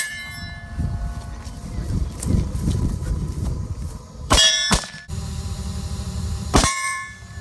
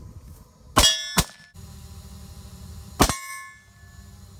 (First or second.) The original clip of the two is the second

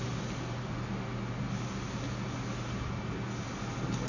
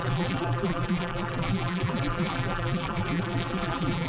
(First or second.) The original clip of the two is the first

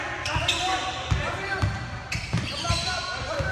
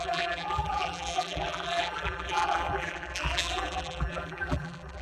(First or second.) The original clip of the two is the first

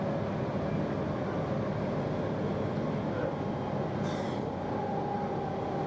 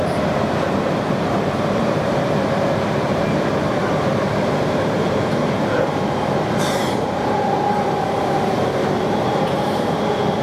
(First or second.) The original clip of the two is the first